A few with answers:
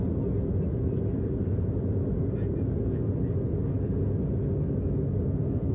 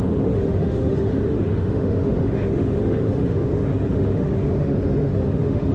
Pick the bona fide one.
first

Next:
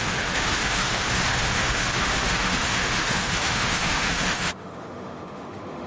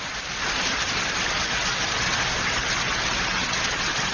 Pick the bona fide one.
second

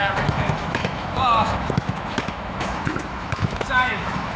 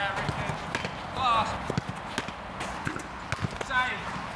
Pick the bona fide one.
second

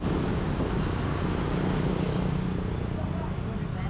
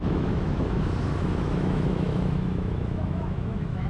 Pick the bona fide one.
first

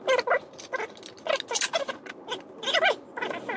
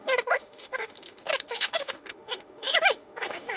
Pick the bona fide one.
first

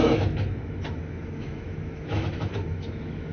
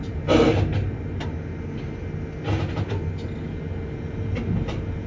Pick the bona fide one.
second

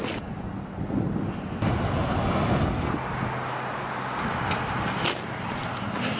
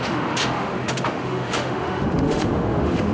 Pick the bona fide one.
first